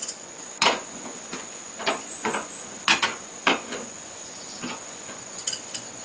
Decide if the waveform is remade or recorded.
remade